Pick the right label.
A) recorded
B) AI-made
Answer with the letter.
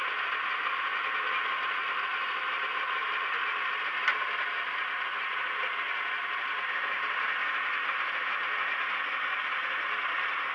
A